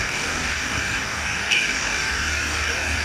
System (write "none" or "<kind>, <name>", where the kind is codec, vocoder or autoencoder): codec, DAC